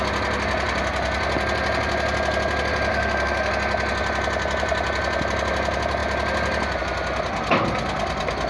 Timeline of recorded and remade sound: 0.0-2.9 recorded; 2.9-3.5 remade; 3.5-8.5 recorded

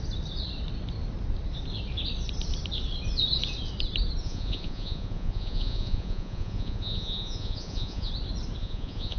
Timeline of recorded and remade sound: 0.0-4.2 recorded; 4.2-8.1 remade; 8.1-8.6 recorded; 8.6-9.2 remade

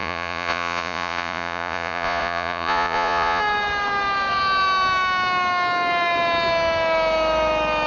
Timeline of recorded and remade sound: 0.0-3.4 remade; 3.4-7.9 recorded

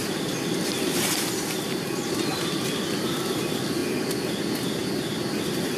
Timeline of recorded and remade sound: 0.0-1.1 remade; 1.1-2.3 recorded; 2.3-2.8 remade; 2.8-5.8 recorded

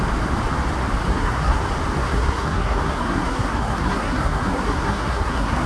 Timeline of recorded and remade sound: 0.0-1.1 recorded; 1.1-1.6 remade; 1.6-2.0 recorded; 2.0-5.7 remade